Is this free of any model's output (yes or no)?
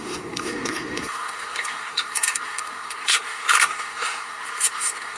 no